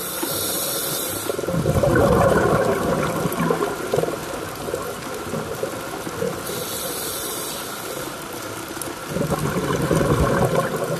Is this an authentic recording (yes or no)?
yes